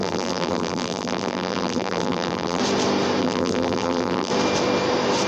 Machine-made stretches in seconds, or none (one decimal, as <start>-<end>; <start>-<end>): 0.0-2.6; 3.2-4.3